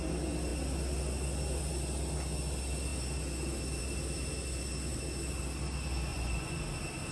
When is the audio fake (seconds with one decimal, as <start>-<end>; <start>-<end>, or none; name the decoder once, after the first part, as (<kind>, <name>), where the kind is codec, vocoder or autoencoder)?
6.1-6.6 (vocoder, Vocos)